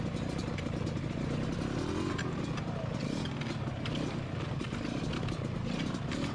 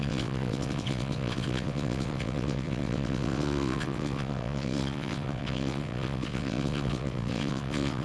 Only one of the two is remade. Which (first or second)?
second